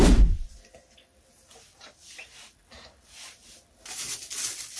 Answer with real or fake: real